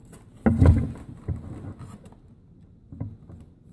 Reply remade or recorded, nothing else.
recorded